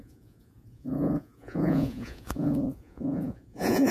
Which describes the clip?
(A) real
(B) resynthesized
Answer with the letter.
B